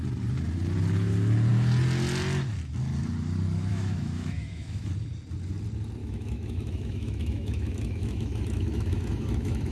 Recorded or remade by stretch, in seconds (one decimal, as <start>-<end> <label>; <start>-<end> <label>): 0.0-3.7 recorded; 3.7-4.9 remade; 4.9-6.0 recorded; 6.0-9.7 remade